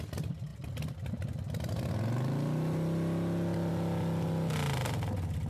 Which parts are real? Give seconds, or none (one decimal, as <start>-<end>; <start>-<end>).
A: 0.0-5.5